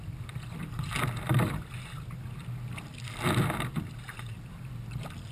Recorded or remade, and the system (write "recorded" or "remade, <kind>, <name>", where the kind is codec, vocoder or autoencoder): recorded